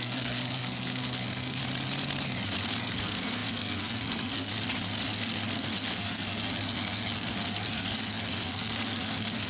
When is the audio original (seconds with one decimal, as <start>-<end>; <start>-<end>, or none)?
1.6-2.8; 4.5-5.1